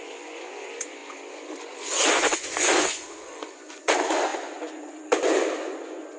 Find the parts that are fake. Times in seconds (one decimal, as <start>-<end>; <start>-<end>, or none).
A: 0.0-6.2